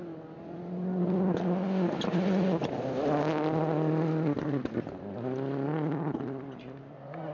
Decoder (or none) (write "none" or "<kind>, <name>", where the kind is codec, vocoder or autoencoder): none